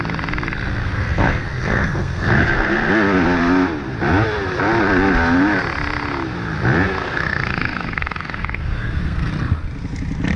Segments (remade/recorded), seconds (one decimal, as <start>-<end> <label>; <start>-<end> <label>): 0.0-0.8 recorded; 0.8-2.9 remade; 2.9-7.0 recorded; 7.0-9.3 remade; 9.3-10.4 recorded